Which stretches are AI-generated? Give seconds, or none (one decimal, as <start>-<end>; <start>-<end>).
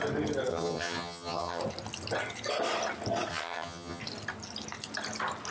0.5-1.6; 3.3-4.0